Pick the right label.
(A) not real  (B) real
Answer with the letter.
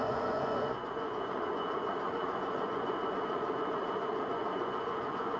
A